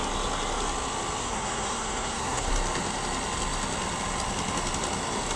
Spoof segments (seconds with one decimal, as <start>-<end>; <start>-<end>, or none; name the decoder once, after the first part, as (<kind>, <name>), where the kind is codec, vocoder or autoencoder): 1.2-2.5 (codec, SNAC)